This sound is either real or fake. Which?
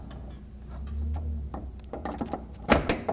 real